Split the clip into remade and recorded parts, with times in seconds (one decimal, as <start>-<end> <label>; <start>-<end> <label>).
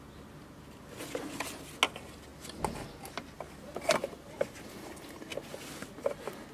0.0-6.5 recorded